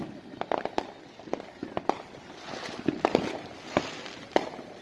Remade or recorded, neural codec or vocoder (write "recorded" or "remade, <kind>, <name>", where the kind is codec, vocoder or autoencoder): recorded